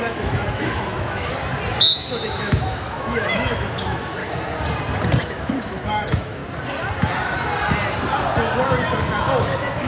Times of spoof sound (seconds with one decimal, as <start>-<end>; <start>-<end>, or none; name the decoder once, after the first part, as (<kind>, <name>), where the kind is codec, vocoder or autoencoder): 0.0-1.3 (autoencoder, DAC-VAE); 1.8-4.2; 5.2-6.4; 9.2-9.9